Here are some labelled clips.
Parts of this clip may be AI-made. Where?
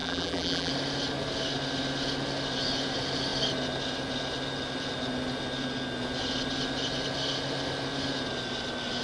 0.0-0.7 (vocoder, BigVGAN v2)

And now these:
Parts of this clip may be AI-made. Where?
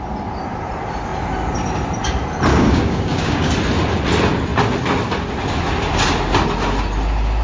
2.5-3.5 (codec, DAC)